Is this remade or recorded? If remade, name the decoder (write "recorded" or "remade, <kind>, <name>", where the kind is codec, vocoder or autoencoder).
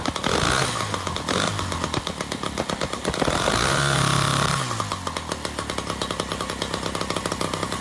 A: recorded